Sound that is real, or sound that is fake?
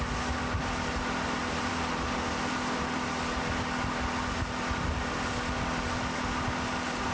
real